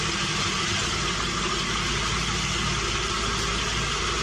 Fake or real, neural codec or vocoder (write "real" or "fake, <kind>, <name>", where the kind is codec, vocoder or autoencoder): real